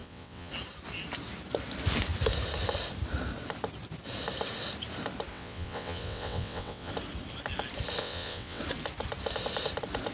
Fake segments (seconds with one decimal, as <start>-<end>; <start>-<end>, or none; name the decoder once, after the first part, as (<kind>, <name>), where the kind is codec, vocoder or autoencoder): 0.0-0.5 (vocoder, WaveNeXt); 5.3-6.9; 8.0-8.6